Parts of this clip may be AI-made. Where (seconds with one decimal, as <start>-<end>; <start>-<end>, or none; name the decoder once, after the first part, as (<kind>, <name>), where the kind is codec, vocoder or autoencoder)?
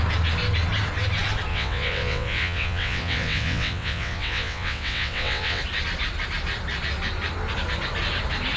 1.5-5.6 (vocoder, WaveNeXt)